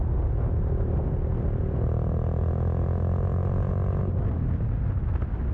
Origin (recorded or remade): recorded